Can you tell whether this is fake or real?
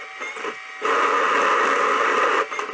real